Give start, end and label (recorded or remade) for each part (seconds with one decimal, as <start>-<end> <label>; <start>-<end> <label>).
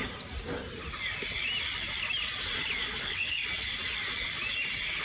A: 0.0-3.0 recorded; 3.0-3.4 remade; 3.4-5.0 recorded